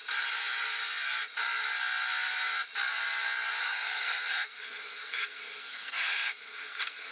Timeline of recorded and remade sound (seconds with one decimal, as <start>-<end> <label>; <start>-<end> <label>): 0.0-3.6 recorded; 3.6-7.1 remade